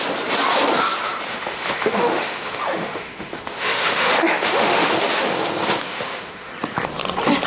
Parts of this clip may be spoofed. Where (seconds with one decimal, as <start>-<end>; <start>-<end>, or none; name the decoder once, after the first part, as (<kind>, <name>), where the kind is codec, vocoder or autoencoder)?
1.3-4.9 (autoencoder, DAC-VAE); 5.9-6.5